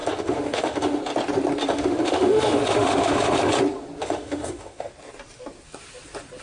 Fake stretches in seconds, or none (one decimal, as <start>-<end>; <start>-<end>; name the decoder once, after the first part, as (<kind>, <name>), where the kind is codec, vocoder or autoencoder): 0.0-1.0 (autoencoder, DAC-VAE); 1.7-3.4; 4.0-4.9